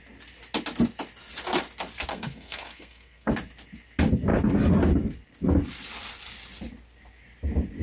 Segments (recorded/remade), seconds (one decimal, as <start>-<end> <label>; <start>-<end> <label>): 0.0-2.1 recorded; 2.1-3.3 remade; 3.3-7.8 recorded